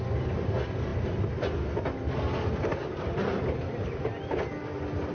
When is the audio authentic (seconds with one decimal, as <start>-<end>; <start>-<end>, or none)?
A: 0.0-5.1